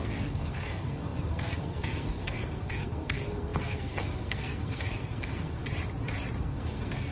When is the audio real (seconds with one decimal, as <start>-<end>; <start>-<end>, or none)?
5.6-6.4